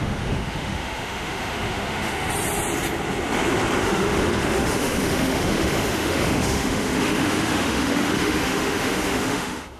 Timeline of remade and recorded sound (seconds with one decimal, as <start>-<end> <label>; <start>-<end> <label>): 0.0-2.3 remade; 2.3-3.8 recorded; 3.8-9.8 remade

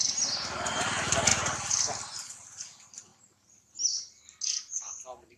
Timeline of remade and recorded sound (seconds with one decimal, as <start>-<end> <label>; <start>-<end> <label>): 0.0-5.4 recorded

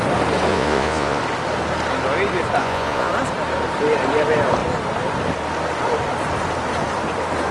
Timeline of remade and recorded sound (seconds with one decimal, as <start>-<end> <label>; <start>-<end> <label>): 0.0-0.5 recorded; 0.5-1.2 remade; 1.2-2.6 recorded; 2.6-3.1 remade; 3.1-7.5 recorded

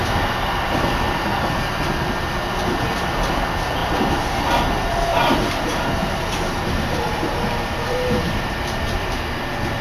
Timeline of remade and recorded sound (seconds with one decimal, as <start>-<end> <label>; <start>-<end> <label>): 0.0-3.8 recorded; 3.8-4.4 remade; 4.4-5.1 recorded; 5.1-9.4 remade; 9.4-9.8 recorded

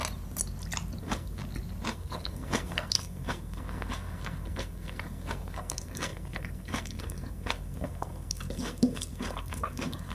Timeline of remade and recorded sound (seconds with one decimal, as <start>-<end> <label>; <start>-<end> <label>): 0.0-1.0 recorded; 1.0-1.4 remade; 1.4-1.9 recorded; 1.9-10.1 remade

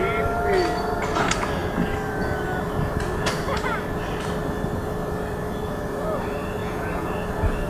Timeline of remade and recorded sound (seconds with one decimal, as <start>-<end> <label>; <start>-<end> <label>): 0.0-6.6 recorded; 6.6-7.1 remade; 7.1-7.7 recorded